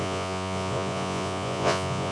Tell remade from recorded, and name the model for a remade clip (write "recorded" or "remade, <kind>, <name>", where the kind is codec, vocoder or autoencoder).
remade, vocoder, Vocos